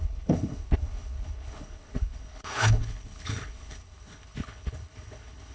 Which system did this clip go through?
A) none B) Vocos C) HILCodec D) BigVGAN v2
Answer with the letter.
C